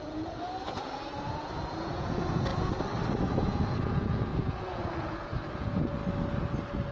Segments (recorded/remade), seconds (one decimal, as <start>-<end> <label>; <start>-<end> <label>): 0.0-2.5 remade; 2.5-3.3 recorded; 3.3-6.0 remade; 6.0-6.9 recorded